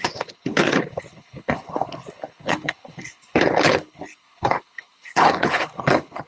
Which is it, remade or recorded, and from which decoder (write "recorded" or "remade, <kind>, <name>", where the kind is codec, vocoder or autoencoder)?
remade, codec, HILCodec